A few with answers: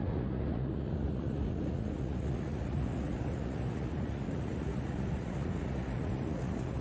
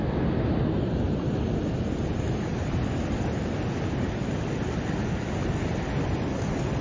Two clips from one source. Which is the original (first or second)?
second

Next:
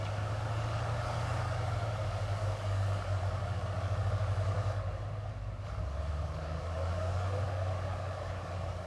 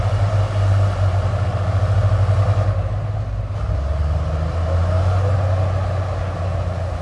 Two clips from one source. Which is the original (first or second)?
second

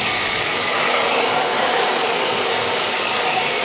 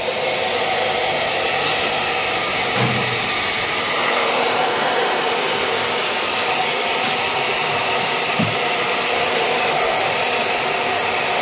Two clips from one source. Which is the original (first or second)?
second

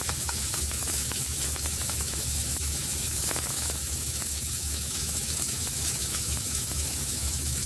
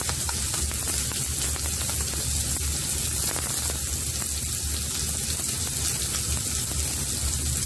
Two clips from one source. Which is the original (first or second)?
second